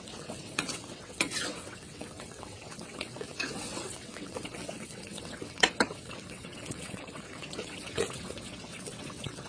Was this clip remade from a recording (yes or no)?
yes